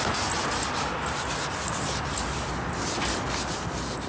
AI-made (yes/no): no